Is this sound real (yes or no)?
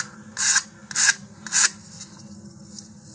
yes